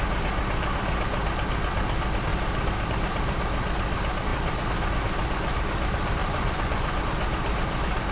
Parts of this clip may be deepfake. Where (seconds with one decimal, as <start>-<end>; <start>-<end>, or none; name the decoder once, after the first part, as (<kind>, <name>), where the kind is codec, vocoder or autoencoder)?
6.2-7.0 (vocoder, Vocos)